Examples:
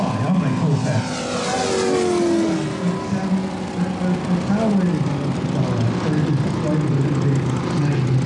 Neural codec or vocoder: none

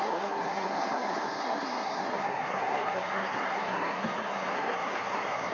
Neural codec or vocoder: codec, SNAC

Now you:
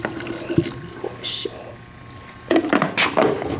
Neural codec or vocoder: none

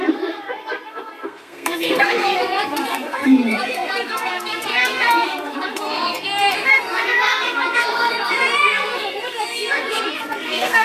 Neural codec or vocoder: codec, SNAC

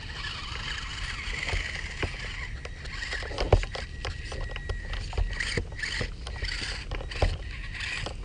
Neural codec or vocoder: none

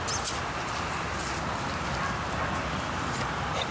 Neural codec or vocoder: none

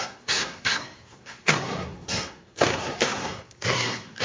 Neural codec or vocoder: codec, SNAC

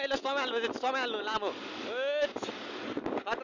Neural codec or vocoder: none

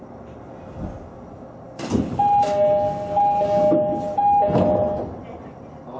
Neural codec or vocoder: none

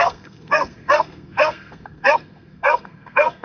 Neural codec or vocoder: codec, SNAC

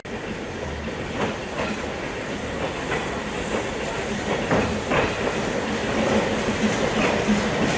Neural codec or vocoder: none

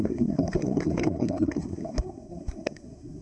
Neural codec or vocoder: codec, SNAC